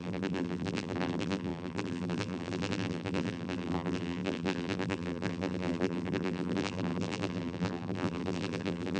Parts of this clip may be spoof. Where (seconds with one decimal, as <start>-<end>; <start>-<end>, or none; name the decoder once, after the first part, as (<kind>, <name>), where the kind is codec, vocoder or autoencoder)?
0.0-9.0 (vocoder, BigVGAN v2)